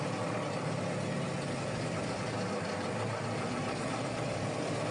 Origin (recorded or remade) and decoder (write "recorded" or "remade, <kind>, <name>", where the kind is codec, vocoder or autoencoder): recorded